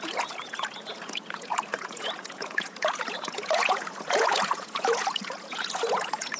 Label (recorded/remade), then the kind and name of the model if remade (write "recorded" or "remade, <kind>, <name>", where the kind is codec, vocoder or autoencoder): remade, vocoder, Vocos